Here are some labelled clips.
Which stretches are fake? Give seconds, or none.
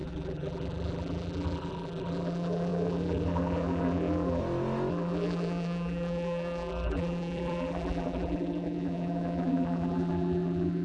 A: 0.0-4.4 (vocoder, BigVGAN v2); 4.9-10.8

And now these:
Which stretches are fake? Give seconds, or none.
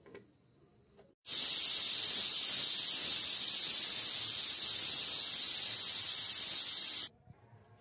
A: none